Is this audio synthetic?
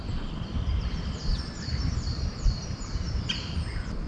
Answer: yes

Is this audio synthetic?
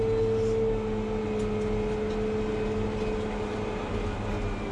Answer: no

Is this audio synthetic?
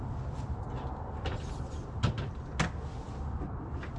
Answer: no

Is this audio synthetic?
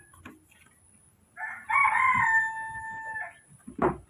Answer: no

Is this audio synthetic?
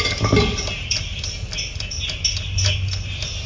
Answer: no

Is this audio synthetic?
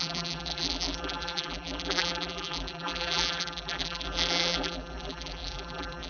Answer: yes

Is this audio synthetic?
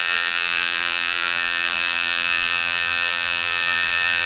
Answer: yes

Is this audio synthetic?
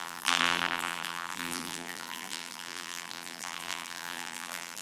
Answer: yes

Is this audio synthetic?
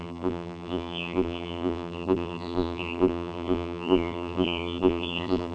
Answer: yes